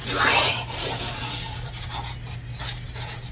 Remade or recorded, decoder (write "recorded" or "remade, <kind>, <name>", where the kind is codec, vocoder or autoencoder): recorded